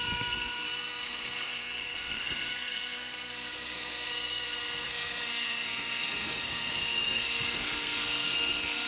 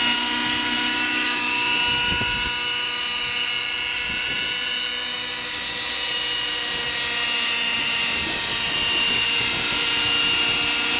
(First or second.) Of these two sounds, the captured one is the second